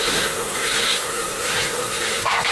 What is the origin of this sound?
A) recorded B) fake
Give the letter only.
B